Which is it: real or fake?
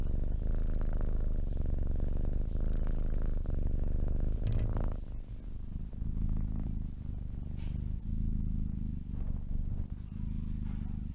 real